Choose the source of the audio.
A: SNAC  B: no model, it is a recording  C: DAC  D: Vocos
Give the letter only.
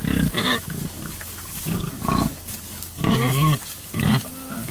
C